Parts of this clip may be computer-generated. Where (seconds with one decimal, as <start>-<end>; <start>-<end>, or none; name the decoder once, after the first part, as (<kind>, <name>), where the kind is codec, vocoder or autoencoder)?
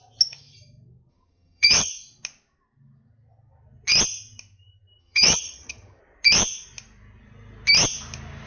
1.1-1.9 (vocoder, HiFi-GAN); 5.0-6.0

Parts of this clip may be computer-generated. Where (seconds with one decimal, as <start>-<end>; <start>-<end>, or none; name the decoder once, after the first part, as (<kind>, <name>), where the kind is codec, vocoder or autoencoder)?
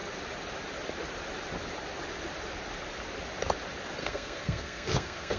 4.0-5.4 (codec, SNAC)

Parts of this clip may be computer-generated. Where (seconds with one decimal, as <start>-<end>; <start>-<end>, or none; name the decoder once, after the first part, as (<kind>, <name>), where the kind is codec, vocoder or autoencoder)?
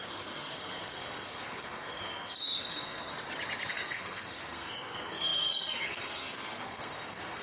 0.0-3.1 (codec, SNAC); 3.7-7.4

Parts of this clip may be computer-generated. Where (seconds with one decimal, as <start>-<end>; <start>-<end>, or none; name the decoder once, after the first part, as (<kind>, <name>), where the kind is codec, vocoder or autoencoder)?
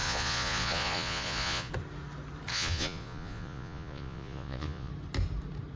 0.0-1.7 (vocoder, Vocos); 2.5-4.9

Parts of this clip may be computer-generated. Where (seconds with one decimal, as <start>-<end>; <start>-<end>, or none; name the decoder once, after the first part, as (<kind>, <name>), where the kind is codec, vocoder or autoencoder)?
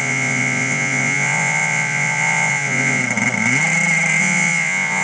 0.0-3.0 (vocoder, Vocos); 4.2-5.0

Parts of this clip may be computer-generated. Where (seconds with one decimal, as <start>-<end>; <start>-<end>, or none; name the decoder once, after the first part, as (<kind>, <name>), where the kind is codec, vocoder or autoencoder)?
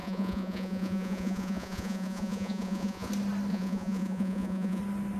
0.0-3.1 (vocoder, Vocos); 3.5-4.8